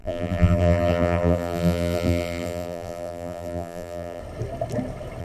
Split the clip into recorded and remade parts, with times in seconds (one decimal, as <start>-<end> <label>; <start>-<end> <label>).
0.0-4.2 remade; 4.2-5.2 recorded